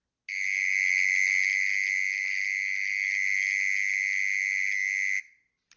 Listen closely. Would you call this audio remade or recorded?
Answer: recorded